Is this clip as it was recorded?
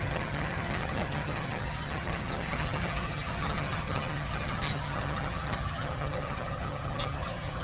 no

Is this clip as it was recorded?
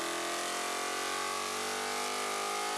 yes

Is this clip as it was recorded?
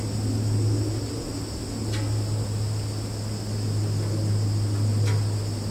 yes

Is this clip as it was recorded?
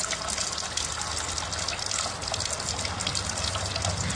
yes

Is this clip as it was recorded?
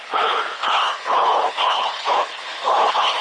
no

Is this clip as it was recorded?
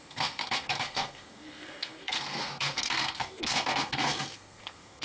no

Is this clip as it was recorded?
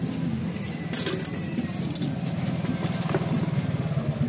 yes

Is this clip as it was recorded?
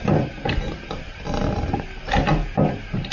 yes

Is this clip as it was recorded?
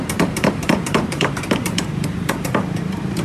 no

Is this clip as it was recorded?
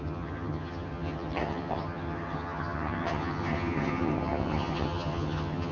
no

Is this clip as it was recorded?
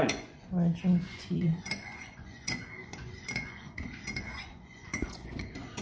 no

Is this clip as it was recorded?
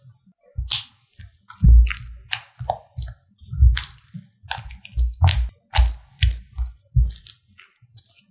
yes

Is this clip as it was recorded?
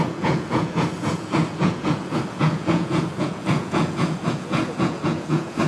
no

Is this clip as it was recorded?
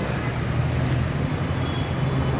yes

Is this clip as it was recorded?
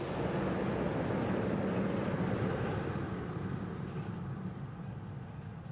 yes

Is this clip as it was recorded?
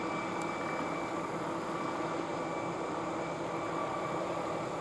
yes